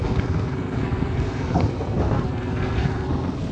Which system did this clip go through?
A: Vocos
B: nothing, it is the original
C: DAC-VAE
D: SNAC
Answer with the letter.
D